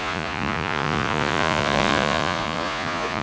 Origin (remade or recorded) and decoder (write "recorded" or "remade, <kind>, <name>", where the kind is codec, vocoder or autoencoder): remade, vocoder, Vocos